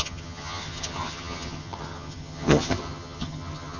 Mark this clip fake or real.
fake